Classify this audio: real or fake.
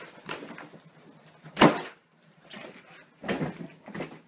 real